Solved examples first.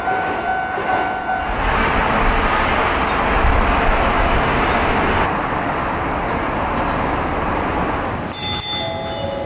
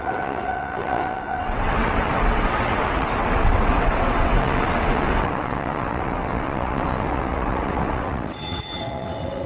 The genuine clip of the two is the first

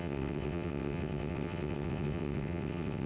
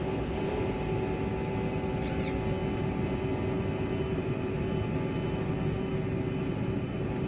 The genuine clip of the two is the second